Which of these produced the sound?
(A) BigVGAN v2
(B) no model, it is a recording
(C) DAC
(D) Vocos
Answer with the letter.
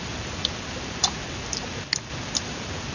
B